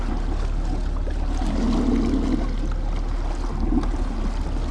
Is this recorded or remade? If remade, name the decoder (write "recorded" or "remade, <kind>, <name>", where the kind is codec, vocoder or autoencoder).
recorded